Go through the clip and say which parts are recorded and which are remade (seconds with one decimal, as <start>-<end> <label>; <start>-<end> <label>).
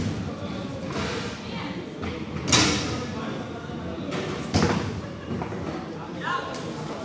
0.0-7.0 recorded